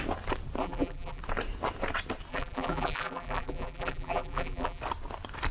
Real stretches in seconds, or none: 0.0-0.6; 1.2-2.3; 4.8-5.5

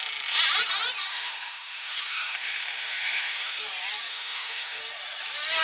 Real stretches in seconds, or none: 0.0-1.1; 3.6-4.1; 4.8-5.6

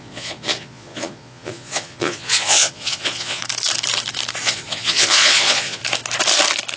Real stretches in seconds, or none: 3.4-4.4; 5.8-6.8